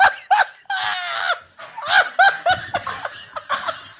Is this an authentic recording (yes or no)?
yes